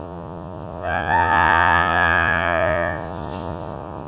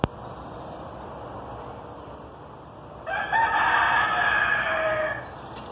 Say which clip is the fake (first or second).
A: first